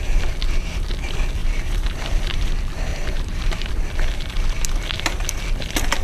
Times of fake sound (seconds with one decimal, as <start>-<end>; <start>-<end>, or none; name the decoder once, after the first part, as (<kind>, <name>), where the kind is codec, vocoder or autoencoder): 1.4-2.5 (vocoder, BigVGAN v2); 2.9-3.7